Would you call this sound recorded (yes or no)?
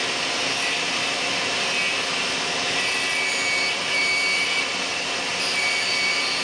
yes